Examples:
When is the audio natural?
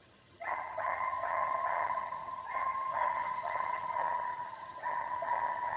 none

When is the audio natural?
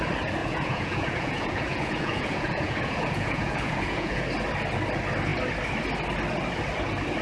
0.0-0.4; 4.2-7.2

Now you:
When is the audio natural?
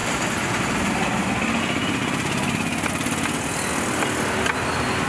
0.0-5.1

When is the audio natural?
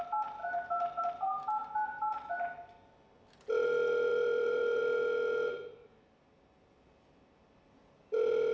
0.0-4.1; 4.8-8.5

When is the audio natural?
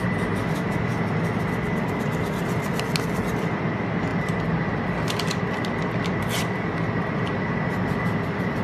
0.0-8.6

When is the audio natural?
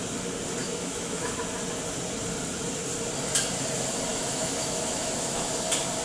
0.0-0.6; 1.3-4.1; 5.5-6.0